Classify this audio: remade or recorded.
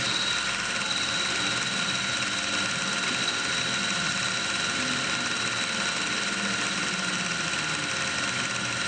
recorded